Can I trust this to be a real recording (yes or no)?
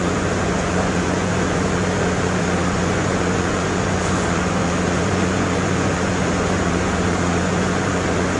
no